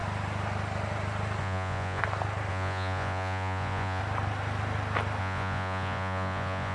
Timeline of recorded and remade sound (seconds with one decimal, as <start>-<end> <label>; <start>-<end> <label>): 0.0-1.4 recorded; 1.4-2.0 remade; 2.0-2.5 recorded; 2.5-4.0 remade; 4.0-5.2 recorded; 5.2-6.7 remade

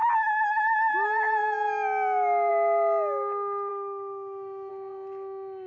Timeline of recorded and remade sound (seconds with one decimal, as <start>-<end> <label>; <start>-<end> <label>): 0.0-3.7 recorded; 3.7-4.7 remade; 4.7-5.7 recorded

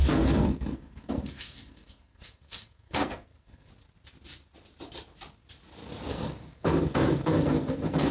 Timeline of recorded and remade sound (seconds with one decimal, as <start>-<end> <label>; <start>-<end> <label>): 0.0-3.7 remade; 3.7-6.1 recorded; 6.1-8.1 remade